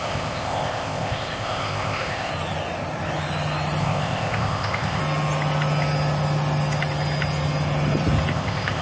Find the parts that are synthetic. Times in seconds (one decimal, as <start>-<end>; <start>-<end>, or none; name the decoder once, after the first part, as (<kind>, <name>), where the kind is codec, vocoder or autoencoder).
0.0-2.3 (codec, ZipCodec); 3.8-5.0; 8.3-8.8